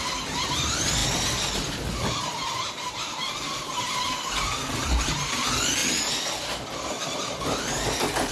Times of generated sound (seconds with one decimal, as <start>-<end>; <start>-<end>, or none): 0.0-5.8; 7.3-8.3